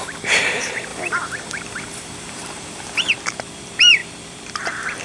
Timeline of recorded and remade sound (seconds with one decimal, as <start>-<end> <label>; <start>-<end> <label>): 0.0-5.0 remade